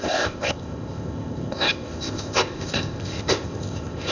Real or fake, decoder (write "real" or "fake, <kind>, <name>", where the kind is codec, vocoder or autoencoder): fake, codec, ZipCodec